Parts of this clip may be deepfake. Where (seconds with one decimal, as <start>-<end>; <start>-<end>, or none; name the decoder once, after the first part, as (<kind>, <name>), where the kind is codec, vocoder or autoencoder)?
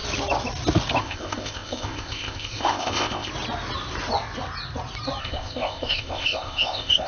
1.0-3.3 (codec, ZipCodec); 5.2-7.1